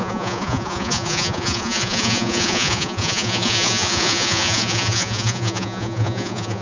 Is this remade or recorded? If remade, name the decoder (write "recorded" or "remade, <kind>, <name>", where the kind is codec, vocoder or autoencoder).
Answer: remade, vocoder, Vocos